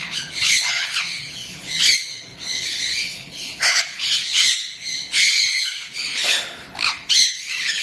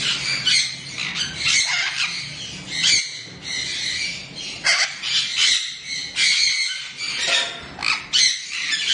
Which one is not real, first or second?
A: first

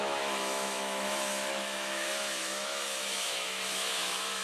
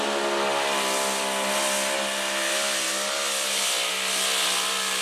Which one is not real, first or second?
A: first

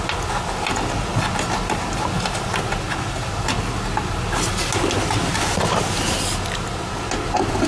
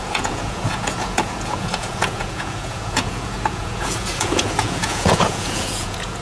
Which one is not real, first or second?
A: second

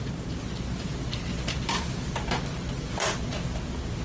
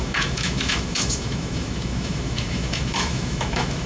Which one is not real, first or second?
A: second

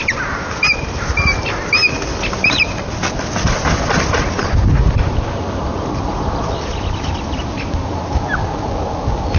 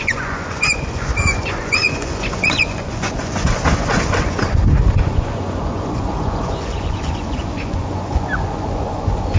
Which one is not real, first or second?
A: second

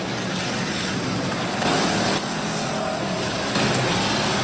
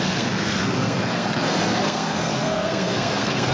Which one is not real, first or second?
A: second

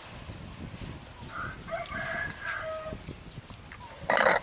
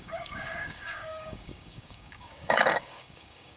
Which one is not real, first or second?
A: second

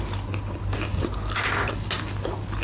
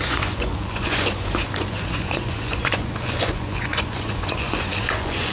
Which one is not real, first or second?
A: second